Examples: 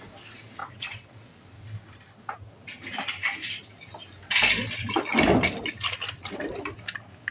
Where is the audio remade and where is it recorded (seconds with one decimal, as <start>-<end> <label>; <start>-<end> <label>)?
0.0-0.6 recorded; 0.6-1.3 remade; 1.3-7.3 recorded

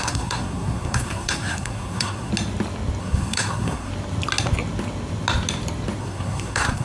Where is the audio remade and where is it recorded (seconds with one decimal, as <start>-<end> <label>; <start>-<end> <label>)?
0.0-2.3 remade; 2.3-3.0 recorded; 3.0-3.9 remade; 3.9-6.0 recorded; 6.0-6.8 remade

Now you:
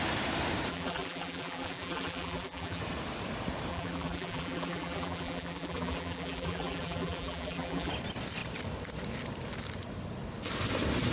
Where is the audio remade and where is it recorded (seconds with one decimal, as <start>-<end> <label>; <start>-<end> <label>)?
0.0-0.7 recorded; 0.7-2.8 remade; 2.8-3.7 recorded; 3.7-7.9 remade; 7.9-11.1 recorded

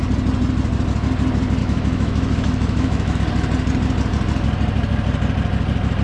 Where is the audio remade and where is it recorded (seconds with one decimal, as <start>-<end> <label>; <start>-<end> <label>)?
0.0-1.6 recorded; 1.6-3.2 remade; 3.2-6.0 recorded

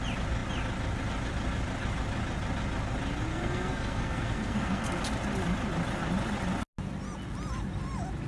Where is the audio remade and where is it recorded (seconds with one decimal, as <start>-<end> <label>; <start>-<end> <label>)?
0.0-3.3 recorded; 3.3-5.0 remade; 5.0-8.3 recorded

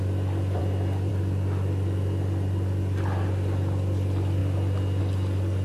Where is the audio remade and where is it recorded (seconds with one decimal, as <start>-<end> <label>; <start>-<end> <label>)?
0.0-5.6 recorded

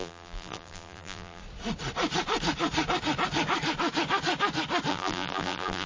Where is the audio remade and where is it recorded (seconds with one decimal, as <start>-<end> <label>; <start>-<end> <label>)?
0.0-1.4 remade; 1.4-4.9 recorded; 4.9-5.9 remade